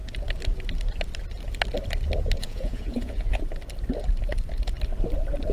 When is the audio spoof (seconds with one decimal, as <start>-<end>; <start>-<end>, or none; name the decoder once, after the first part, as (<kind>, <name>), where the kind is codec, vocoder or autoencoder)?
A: 2.4-3.4 (vocoder, Vocos)